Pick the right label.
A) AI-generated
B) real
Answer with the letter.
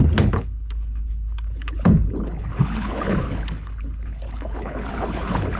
A